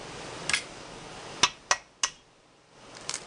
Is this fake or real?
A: real